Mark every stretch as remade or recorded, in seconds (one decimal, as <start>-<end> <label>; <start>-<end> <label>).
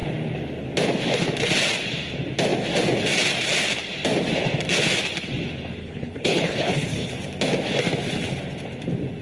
0.0-5.8 recorded; 5.8-7.1 remade; 7.1-9.2 recorded